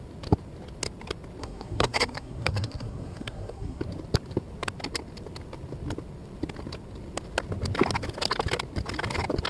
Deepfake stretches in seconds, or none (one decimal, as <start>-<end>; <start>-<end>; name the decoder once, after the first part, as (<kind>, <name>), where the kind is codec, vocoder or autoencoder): 1.4-3.8 (codec, SNAC)